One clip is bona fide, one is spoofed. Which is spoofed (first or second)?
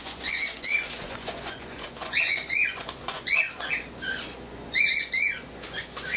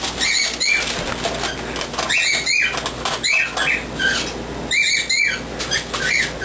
first